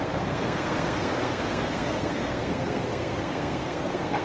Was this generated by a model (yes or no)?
yes